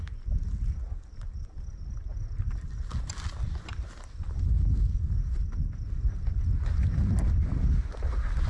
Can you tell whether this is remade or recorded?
recorded